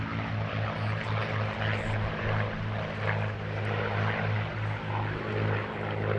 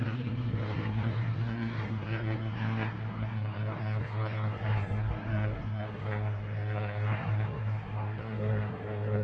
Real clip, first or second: first